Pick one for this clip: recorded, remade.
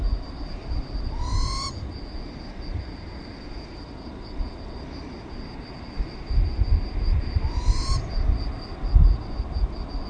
recorded